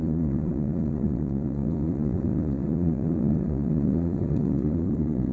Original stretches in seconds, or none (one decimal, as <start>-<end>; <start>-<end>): none